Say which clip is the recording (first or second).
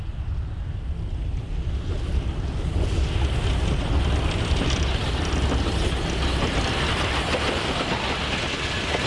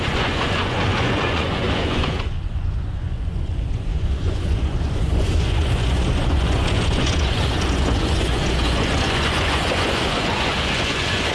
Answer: first